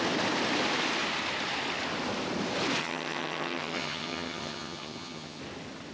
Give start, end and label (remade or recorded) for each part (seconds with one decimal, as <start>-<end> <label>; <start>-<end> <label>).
0.0-2.8 recorded; 2.8-5.4 remade; 5.4-5.9 recorded